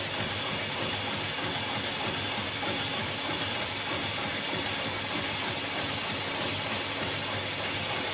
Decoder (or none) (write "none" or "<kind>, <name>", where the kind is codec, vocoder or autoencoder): none